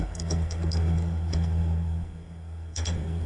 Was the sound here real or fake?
fake